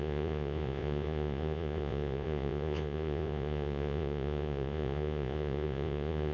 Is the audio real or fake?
fake